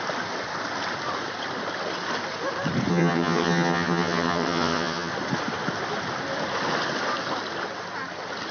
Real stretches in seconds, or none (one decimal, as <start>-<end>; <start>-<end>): 0.0-2.9; 5.1-8.5